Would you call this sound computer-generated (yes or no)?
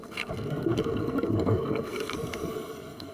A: yes